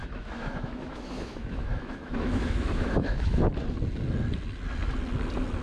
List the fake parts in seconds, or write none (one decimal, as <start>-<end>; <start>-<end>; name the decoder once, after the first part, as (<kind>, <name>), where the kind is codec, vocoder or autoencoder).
0.0-3.4 (autoencoder, DAC-VAE)